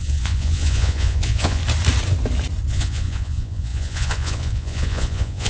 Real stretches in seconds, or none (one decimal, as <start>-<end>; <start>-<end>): 1.6-2.7